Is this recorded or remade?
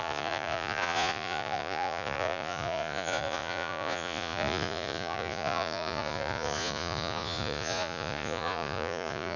remade